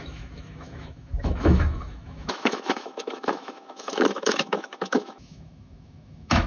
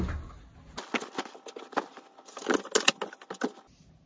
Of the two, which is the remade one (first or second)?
first